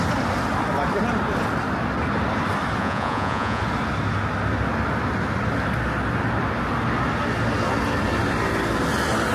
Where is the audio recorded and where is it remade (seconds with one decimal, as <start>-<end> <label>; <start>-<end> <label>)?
0.0-2.8 recorded; 2.8-3.6 remade; 3.6-9.3 recorded